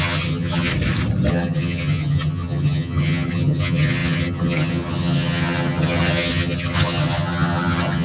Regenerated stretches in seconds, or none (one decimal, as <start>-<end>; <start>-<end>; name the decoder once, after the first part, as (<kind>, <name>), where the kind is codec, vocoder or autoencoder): 0.0-0.7 (vocoder, HiFi-GAN); 1.3-8.0